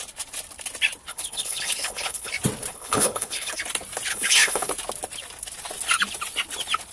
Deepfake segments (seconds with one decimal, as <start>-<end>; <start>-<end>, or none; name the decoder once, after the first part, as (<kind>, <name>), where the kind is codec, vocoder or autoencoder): 1.1-2.3 (codec, HILCodec); 2.7-3.6; 4.1-4.7